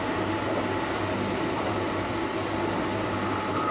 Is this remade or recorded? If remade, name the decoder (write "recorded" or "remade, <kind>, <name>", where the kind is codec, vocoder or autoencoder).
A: recorded